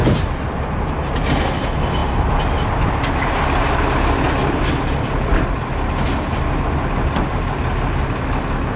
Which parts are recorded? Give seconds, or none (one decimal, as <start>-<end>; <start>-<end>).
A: 0.0-8.8